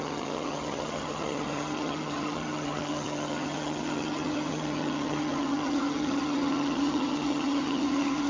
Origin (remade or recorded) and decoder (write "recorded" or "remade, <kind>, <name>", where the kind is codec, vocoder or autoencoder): remade, vocoder, HiFi-GAN